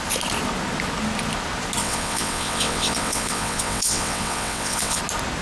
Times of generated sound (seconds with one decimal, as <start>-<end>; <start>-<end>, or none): 1.8-5.0